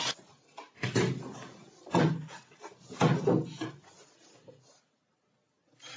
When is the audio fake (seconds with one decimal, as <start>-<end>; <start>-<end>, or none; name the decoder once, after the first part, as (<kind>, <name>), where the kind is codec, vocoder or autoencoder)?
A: none